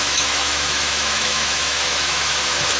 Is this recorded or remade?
remade